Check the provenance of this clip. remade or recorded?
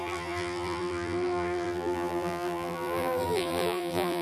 remade